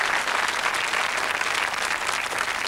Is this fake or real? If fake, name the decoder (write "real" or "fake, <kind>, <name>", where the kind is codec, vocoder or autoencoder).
real